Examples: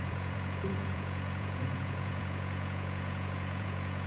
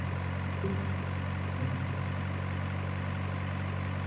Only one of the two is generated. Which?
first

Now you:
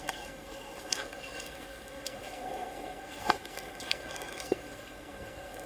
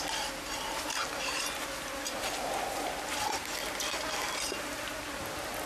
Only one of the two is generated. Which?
first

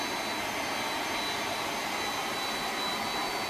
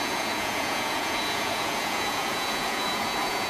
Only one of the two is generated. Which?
second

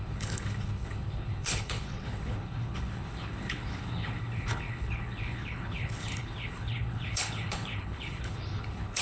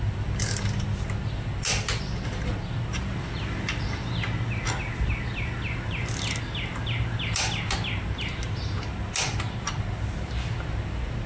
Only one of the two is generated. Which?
first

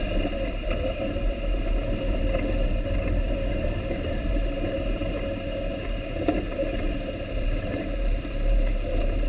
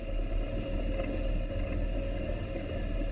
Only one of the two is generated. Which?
first